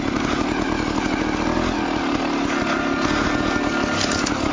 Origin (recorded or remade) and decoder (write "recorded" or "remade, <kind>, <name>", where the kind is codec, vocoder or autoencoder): recorded